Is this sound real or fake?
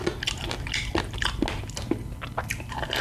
real